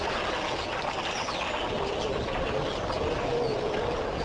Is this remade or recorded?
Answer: recorded